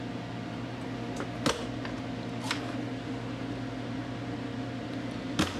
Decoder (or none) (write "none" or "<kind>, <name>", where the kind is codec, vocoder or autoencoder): none